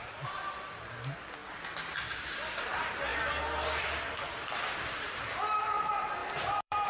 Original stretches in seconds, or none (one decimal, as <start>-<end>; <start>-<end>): 0.0-4.4; 5.2-6.2